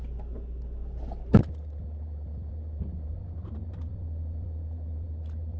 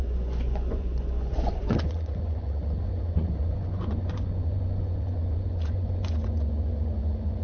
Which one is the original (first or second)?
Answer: first